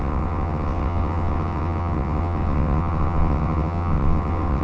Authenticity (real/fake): fake